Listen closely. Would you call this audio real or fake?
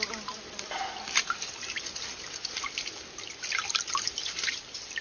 real